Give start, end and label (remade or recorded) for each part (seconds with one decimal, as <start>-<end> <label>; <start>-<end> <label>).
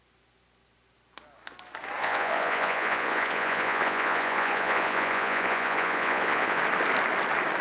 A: 0.0-2.0 recorded; 2.0-6.6 remade; 6.6-7.6 recorded